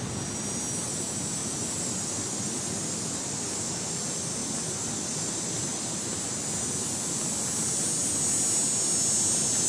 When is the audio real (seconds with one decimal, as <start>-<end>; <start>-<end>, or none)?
0.0-1.4; 2.6-4.4; 6.1-9.7